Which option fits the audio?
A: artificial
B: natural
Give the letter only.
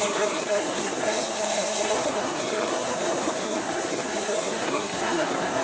A